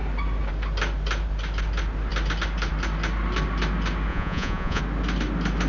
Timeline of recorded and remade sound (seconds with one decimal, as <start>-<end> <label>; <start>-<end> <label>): 0.0-4.1 recorded; 4.1-4.8 remade; 4.8-5.7 recorded